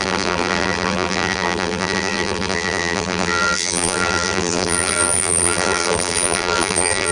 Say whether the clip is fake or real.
fake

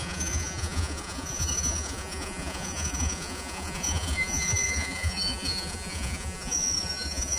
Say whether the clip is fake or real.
fake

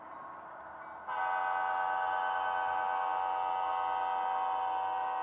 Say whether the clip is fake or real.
real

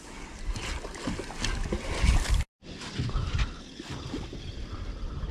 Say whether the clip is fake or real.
real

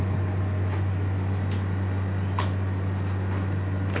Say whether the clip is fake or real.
real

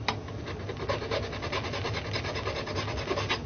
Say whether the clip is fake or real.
real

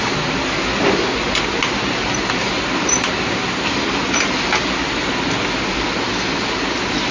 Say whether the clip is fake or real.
real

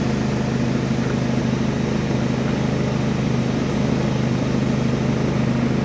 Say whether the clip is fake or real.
real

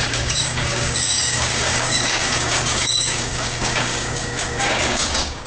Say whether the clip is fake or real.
fake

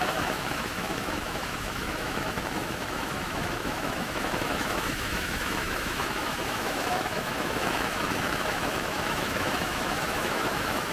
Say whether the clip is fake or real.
fake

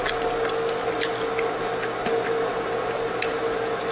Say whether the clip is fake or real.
real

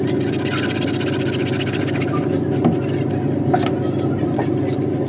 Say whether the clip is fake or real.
real